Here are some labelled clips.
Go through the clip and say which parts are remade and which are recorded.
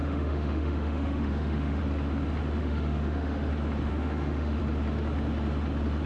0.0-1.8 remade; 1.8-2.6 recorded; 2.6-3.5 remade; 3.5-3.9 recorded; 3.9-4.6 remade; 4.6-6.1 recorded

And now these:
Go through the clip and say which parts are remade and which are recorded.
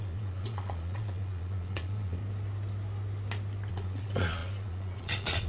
0.0-2.2 remade; 2.2-3.7 recorded; 3.7-5.5 remade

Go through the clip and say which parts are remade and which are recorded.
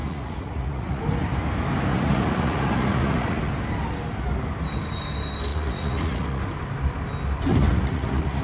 0.0-1.0 remade; 1.0-1.9 recorded; 1.9-3.5 remade; 3.5-5.5 recorded; 5.5-6.4 remade; 6.4-7.5 recorded; 7.5-8.4 remade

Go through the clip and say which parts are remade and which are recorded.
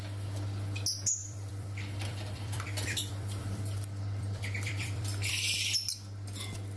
0.0-1.2 recorded; 1.2-5.3 remade; 5.3-6.8 recorded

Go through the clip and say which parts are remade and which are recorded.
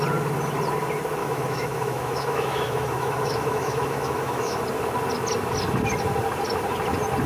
0.0-1.2 recorded; 1.2-4.6 remade; 4.6-7.3 recorded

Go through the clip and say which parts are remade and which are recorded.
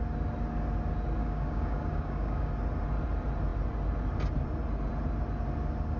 0.0-1.2 recorded; 1.2-2.5 remade; 2.5-6.0 recorded